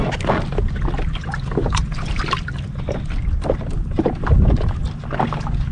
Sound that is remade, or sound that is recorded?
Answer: recorded